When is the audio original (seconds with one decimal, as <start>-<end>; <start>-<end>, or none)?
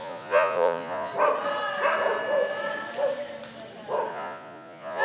1.1-4.1